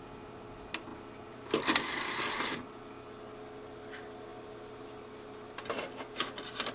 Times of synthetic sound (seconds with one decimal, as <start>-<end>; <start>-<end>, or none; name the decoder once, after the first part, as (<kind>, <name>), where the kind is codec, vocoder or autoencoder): none